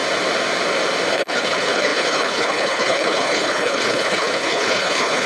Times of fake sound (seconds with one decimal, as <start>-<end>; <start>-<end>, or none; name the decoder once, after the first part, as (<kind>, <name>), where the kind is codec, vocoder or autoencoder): 1.1-5.3 (codec, HILCodec)